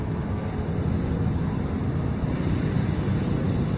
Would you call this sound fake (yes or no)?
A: no